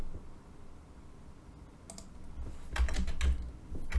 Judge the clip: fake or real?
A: real